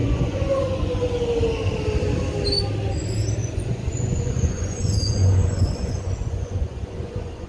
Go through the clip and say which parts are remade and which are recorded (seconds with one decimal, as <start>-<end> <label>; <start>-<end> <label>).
0.0-1.1 remade; 1.1-3.4 recorded; 3.4-7.5 remade